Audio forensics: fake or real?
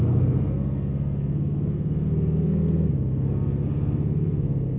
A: fake